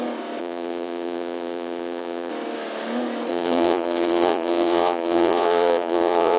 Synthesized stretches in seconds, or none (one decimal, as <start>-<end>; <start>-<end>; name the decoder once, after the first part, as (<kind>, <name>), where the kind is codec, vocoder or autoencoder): 0.4-2.3 (vocoder, Vocos); 3.3-6.4